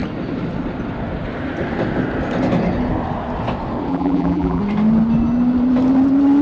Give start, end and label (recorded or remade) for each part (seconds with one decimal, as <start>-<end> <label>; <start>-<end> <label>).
0.0-3.9 recorded; 3.9-4.6 remade; 4.6-6.4 recorded